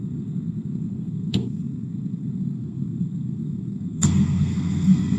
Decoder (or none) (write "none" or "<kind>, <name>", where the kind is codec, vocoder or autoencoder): codec, SNAC